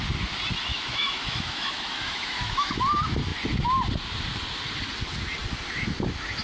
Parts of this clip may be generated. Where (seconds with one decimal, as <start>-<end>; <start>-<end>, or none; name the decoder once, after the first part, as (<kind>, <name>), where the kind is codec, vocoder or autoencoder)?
0.7-2.8 (autoencoder, DAC-VAE)